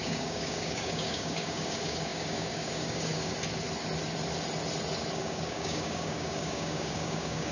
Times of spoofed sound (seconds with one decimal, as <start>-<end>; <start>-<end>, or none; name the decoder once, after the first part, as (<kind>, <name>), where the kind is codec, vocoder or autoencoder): 0.0-3.3 (codec, DAC); 5.2-7.5